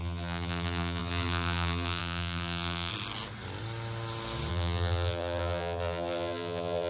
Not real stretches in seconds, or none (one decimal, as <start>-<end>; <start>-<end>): 0.0-2.9; 4.5-6.9